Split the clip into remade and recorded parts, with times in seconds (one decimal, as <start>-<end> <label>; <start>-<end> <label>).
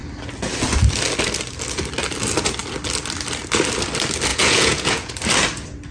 0.0-4.3 recorded; 4.3-5.1 remade; 5.1-5.9 recorded